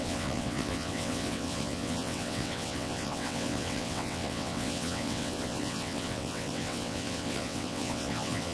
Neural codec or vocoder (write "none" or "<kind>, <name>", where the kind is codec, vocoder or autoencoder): vocoder, WaveNeXt